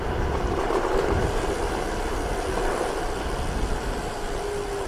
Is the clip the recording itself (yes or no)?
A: yes